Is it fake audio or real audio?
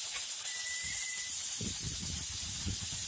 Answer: real